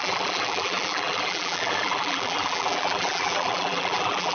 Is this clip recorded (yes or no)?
no